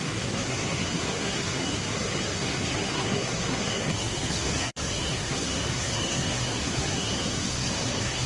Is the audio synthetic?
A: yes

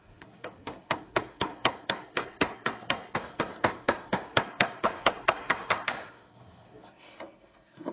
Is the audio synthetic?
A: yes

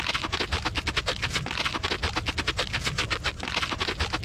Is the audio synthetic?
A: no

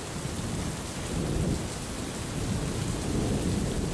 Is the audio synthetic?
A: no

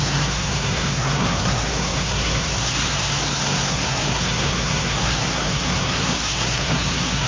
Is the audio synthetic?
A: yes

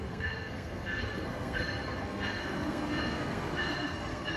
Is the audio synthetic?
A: yes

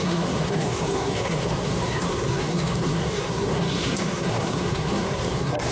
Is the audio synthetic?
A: yes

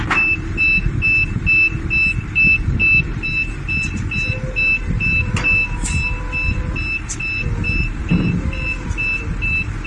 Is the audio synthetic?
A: no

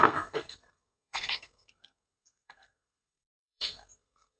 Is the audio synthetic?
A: yes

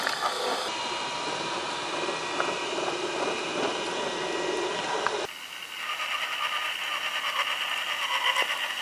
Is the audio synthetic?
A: no